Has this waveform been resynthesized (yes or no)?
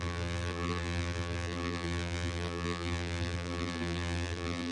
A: yes